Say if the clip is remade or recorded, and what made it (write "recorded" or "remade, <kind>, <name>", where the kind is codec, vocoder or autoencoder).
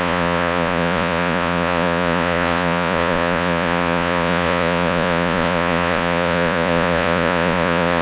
remade, vocoder, Vocos